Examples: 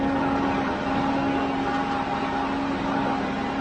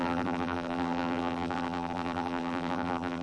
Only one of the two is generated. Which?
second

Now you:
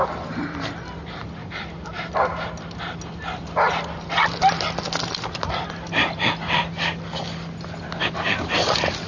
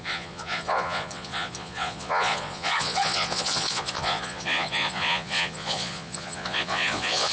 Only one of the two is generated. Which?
second